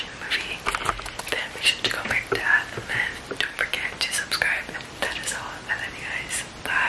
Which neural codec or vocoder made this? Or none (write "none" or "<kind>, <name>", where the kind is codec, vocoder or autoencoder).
none